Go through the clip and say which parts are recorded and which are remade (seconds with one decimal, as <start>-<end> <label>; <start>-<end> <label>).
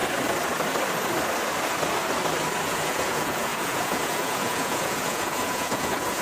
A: 0.0-2.6 recorded; 2.6-6.2 remade